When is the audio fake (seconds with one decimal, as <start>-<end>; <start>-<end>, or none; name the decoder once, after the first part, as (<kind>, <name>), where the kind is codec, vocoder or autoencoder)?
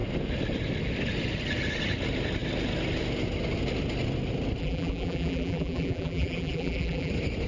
4.6-7.1 (vocoder, BigVGAN v2)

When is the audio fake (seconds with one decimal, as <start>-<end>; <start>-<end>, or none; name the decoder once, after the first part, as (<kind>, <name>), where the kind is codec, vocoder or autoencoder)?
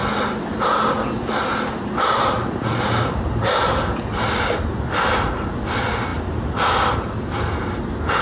none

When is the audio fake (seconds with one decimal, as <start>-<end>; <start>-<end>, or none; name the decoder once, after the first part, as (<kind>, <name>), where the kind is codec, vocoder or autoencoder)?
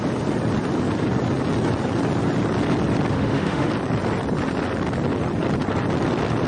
3.1-3.7 (autoencoder, DAC-VAE)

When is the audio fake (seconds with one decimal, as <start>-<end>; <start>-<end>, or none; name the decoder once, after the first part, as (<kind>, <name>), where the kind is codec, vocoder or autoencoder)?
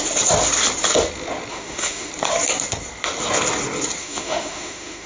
1.5-2.1 (autoencoder, DAC-VAE); 4.0-5.1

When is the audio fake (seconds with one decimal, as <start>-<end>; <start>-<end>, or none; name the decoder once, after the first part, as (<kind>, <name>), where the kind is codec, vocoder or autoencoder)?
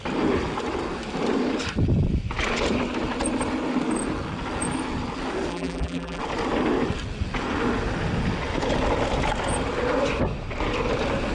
5.5-6.2 (vocoder, BigVGAN v2)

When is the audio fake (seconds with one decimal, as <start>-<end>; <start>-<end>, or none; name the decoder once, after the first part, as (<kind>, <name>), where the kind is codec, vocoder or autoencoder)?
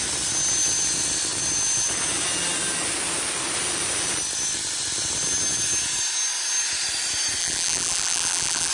7.4-8.7 (vocoder, BigVGAN v2)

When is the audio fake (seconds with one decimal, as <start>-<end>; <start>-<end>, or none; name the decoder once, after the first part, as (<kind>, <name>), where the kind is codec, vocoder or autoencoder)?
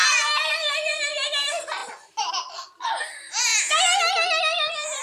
0.5-1.8 (vocoder, BigVGAN v2); 2.3-3.5; 4.4-5.0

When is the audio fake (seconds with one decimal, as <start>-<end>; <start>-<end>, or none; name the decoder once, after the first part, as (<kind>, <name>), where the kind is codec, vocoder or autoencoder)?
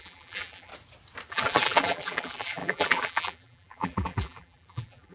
0.0-0.7 (vocoder, BigVGAN v2); 1.3-5.1